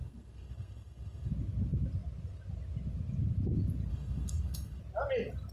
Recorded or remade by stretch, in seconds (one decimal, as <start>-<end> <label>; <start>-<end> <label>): 0.0-1.3 remade; 1.3-3.9 recorded; 3.9-4.8 remade; 4.8-5.5 recorded